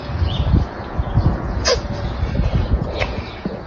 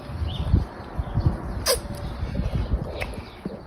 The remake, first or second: first